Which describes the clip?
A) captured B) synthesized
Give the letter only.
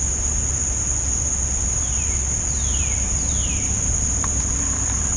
A